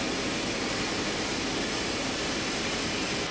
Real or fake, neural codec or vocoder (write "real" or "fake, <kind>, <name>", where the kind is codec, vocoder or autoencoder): real